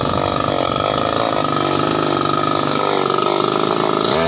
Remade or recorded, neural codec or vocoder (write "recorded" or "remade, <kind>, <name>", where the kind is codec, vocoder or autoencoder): recorded